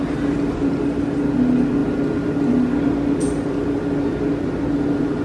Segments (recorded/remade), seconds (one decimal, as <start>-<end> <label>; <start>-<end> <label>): 0.0-5.2 recorded